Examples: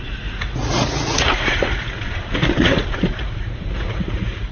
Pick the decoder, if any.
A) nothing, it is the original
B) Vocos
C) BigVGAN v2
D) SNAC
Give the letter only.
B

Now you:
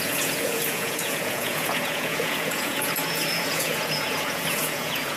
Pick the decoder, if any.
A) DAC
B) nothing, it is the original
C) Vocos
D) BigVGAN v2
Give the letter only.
C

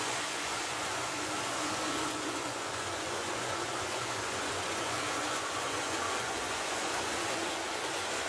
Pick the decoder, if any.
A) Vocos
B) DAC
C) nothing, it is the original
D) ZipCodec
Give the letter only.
A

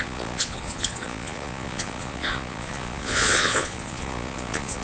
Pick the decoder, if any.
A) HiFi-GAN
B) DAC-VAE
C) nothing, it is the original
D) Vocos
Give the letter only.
D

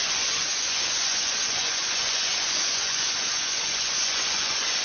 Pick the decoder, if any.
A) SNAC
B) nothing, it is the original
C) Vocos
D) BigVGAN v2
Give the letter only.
C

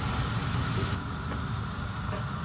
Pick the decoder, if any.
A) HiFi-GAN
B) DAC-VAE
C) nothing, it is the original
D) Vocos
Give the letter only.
C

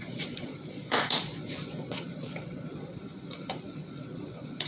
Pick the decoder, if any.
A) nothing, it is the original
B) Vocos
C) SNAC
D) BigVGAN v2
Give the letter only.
B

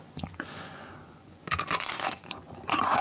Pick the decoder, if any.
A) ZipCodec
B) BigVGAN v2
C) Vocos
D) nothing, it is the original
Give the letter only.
C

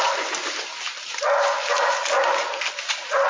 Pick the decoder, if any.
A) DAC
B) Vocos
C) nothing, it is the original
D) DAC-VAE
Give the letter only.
C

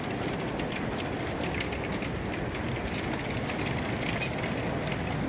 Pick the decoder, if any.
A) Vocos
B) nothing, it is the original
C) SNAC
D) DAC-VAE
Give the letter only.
B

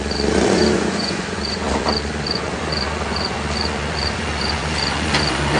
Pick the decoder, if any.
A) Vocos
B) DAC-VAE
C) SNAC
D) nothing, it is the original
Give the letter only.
A